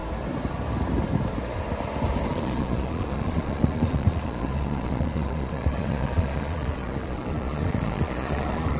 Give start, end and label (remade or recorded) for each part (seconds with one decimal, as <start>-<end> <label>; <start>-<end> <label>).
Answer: 0.0-2.3 recorded; 2.3-8.8 remade

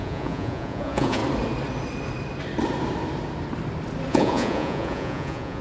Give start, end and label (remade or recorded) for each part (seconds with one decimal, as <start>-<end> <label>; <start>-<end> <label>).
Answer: 0.0-1.2 remade; 1.2-4.1 recorded; 4.1-5.6 remade

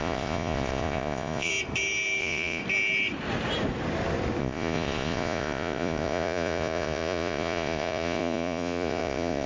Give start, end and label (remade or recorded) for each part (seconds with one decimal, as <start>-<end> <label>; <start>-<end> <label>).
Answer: 0.0-1.5 remade; 1.5-2.2 recorded; 2.2-2.6 remade; 2.6-4.4 recorded; 4.4-9.5 remade

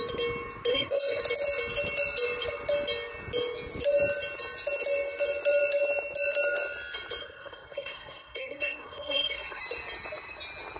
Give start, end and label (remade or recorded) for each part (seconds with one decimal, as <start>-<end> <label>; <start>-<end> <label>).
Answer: 0.0-0.7 recorded; 0.7-1.2 remade; 1.2-7.2 recorded; 7.2-9.6 remade; 9.6-10.8 recorded

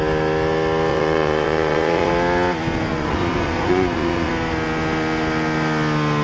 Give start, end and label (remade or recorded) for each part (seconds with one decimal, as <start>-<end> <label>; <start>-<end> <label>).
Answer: 0.0-0.9 recorded; 0.9-2.1 remade; 2.1-2.9 recorded; 2.9-4.3 remade; 4.3-6.2 recorded